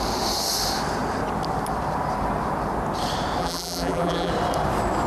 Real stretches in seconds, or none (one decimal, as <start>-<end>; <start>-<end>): 0.0-3.4; 4.3-5.1